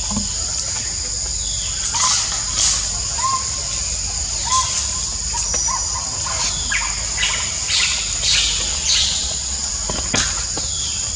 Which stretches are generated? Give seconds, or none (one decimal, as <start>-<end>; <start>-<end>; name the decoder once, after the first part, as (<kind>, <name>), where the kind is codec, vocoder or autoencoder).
8.7-9.7 (vocoder, Vocos)